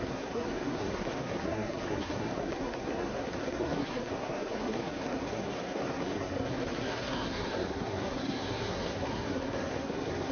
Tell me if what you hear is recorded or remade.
remade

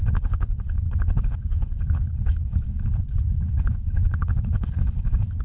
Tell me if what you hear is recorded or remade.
remade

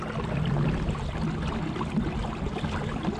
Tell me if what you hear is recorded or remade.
recorded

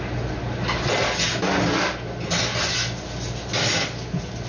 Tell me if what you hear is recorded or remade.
recorded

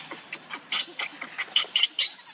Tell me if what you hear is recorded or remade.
recorded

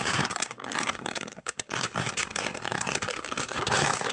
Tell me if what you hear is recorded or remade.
remade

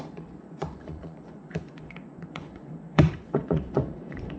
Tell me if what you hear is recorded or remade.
remade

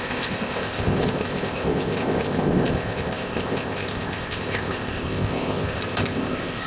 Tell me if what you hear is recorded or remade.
remade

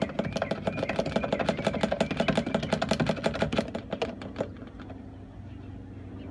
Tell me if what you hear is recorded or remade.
recorded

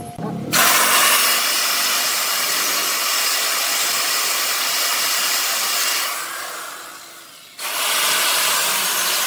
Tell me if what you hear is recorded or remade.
recorded